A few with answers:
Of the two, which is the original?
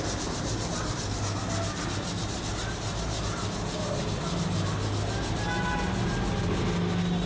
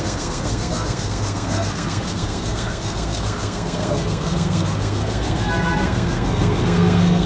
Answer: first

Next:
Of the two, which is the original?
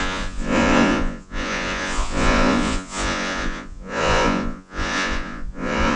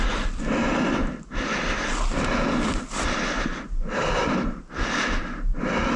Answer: second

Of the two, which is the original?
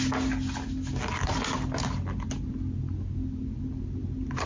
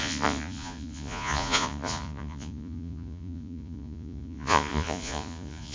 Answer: first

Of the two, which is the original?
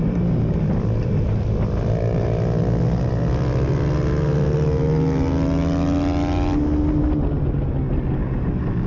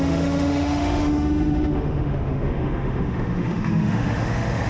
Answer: first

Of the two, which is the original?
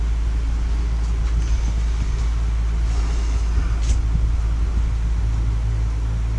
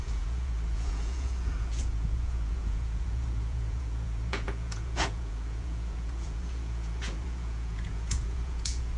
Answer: first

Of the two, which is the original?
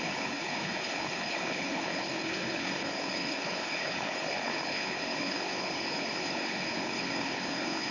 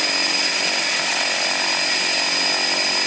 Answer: second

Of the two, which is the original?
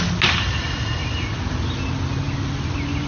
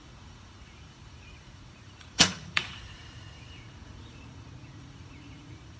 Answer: first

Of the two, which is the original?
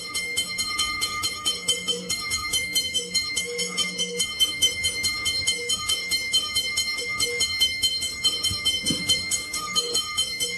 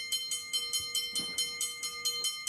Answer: second